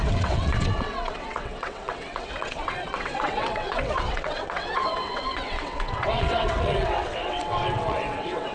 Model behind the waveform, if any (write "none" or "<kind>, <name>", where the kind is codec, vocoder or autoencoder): vocoder, WaveNeXt